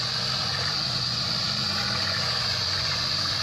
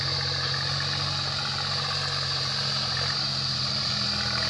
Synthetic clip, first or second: first